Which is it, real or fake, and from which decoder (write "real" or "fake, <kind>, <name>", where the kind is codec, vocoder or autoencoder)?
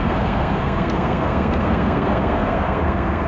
fake, codec, SNAC